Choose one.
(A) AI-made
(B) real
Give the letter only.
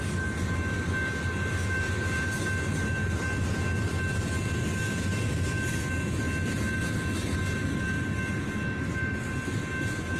B